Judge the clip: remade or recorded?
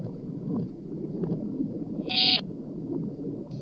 remade